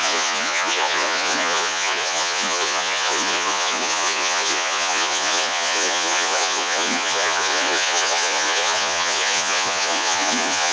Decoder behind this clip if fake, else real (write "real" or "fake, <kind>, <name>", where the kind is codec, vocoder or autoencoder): fake, vocoder, Vocos